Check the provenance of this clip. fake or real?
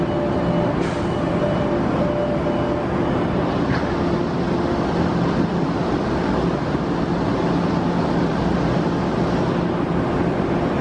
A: real